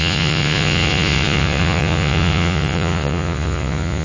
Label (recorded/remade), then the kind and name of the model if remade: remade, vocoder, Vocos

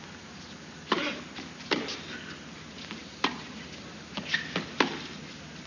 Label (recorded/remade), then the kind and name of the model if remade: recorded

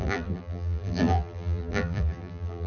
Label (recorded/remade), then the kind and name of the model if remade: remade, vocoder, BigVGAN v2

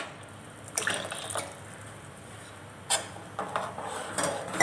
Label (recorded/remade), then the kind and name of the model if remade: recorded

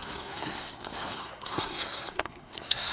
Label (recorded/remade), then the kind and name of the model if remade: remade, codec, SNAC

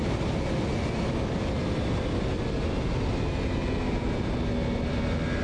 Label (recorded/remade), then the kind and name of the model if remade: recorded